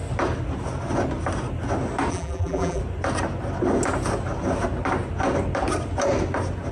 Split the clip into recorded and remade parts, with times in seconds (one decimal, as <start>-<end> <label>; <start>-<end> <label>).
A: 0.0-2.1 recorded; 2.1-2.8 remade; 2.8-6.7 recorded